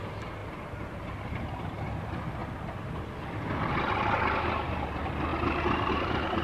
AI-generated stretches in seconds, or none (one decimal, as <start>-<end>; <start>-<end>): 0.0-2.4; 4.4-6.4